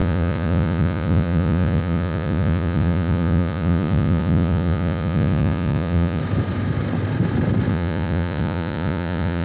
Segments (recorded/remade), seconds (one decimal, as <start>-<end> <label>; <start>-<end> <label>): 0.0-6.2 remade; 6.2-7.7 recorded; 7.7-9.4 remade